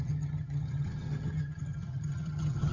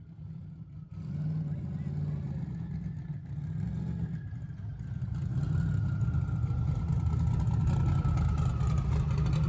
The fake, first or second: first